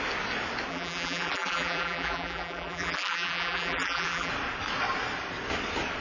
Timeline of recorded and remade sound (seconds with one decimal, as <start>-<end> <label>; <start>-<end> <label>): 0.0-0.7 recorded; 0.7-4.3 remade; 4.3-6.0 recorded